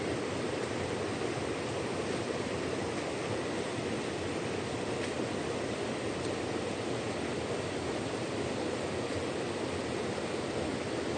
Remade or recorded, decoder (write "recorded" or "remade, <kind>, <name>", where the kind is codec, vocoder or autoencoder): recorded